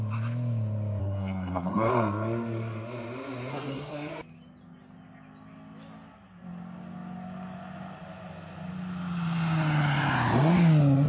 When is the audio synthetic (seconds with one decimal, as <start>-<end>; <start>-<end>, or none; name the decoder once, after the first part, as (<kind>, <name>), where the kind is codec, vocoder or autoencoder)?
1.0-1.9 (codec, SNAC); 3.5-4.1